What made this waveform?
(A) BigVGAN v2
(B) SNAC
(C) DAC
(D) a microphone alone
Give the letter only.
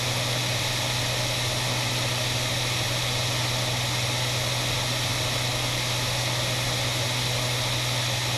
D